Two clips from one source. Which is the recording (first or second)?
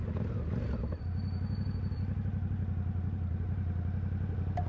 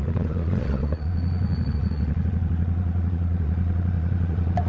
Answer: first